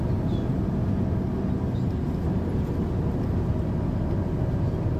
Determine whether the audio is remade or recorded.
recorded